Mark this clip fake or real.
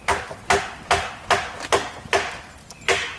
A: real